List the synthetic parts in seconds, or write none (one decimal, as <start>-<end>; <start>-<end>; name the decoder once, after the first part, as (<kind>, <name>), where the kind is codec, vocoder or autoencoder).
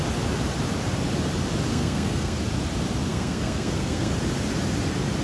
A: 1.7-2.4 (codec, SNAC); 3.1-4.1